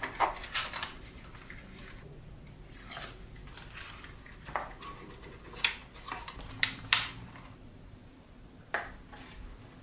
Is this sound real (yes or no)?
yes